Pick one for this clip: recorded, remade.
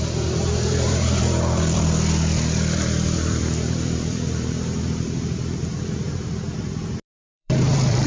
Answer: remade